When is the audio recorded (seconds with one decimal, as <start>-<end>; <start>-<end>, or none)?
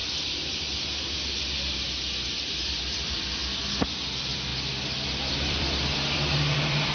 0.0-0.7; 3.4-3.9; 4.5-5.3